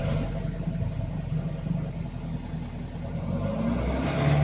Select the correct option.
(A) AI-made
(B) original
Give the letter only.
B